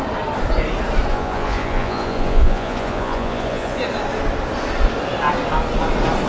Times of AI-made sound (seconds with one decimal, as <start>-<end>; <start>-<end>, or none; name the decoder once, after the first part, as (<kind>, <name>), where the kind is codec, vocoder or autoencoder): 1.1-3.8 (vocoder, Vocos)